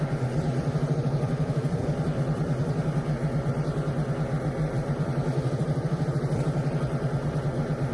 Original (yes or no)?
yes